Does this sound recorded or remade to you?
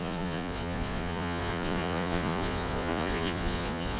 remade